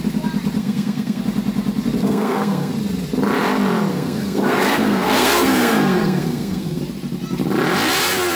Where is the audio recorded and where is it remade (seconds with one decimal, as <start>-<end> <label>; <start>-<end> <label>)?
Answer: 0.0-0.6 recorded; 0.6-1.2 remade; 1.2-2.0 recorded; 2.0-2.7 remade; 2.7-3.9 recorded; 3.9-6.8 remade; 6.8-8.4 recorded